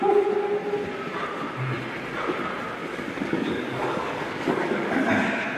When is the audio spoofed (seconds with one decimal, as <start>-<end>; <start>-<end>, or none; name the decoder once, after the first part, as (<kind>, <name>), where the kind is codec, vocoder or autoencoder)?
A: 2.8-5.0 (codec, DAC)